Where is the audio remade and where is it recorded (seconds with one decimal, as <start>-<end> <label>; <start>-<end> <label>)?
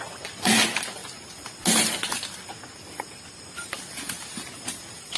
0.0-5.2 recorded